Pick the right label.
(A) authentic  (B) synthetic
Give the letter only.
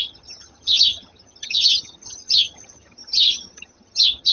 B